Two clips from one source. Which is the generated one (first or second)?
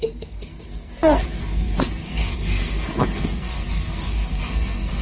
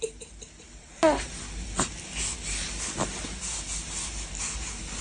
first